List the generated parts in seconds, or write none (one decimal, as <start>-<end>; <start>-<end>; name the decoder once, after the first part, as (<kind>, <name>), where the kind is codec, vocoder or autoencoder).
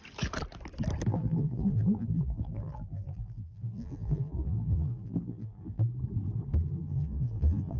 1.1-5.8 (vocoder, BigVGAN v2); 6.7-7.8